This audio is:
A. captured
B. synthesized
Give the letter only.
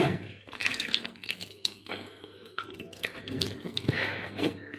B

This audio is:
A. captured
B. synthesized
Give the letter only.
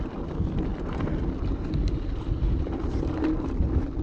A